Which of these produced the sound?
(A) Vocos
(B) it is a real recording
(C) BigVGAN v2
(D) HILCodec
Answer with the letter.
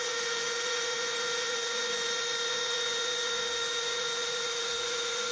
A